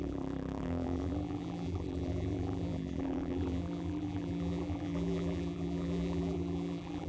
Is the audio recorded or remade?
remade